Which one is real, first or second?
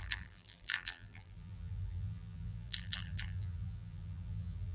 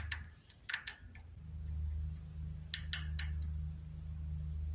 second